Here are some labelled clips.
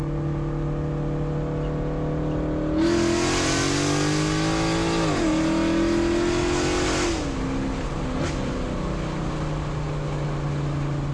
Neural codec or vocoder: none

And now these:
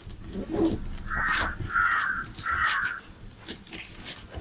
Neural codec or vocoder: none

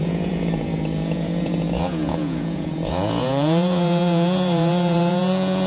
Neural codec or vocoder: vocoder, Vocos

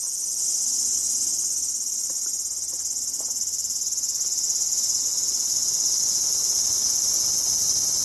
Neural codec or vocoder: none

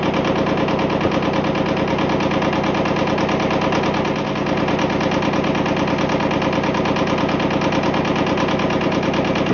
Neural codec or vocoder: none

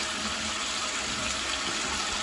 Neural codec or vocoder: none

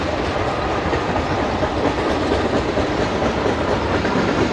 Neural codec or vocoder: none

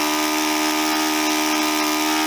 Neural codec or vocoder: none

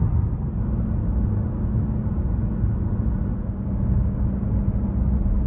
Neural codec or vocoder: none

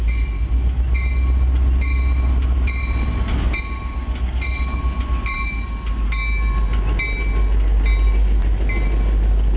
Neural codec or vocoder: none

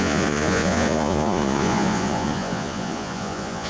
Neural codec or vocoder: vocoder, Vocos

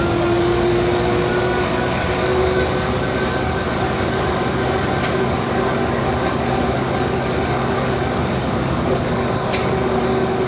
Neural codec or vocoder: codec, DAC